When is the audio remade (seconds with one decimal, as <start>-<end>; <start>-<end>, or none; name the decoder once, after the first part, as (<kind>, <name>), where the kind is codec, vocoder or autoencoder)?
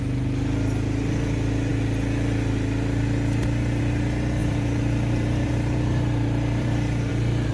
4.4-7.1 (vocoder, BigVGAN v2)